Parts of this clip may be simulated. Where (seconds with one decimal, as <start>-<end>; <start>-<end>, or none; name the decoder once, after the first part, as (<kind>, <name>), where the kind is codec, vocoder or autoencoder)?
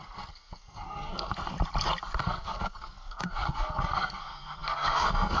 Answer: 0.0-1.3 (codec, SNAC); 2.2-5.4